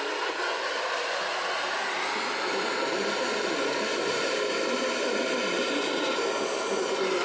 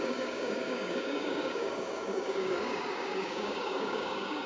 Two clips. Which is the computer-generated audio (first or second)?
second